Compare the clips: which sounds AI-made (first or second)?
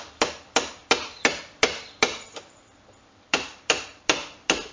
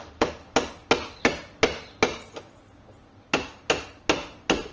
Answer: first